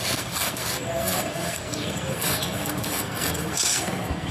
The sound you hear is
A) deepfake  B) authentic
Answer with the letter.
A